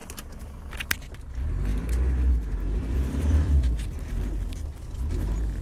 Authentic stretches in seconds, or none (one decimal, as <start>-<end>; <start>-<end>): 0.0-2.8; 3.5-5.6